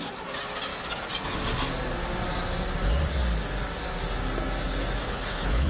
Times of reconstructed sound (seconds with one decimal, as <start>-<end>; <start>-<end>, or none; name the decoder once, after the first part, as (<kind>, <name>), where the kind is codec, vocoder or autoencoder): 5.0-5.7 (codec, HILCodec)